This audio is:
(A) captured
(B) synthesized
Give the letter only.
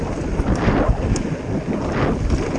A